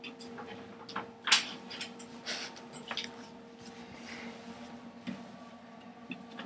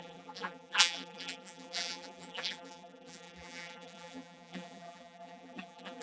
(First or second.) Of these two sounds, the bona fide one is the first